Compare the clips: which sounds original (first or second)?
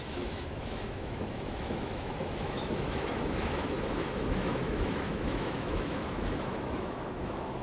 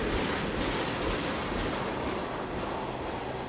second